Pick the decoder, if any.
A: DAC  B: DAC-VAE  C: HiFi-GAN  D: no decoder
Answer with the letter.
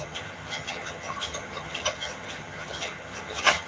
C